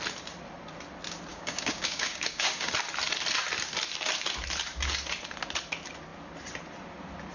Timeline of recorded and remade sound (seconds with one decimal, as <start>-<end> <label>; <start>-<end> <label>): 0.0-1.3 recorded; 1.3-2.7 remade; 2.7-7.3 recorded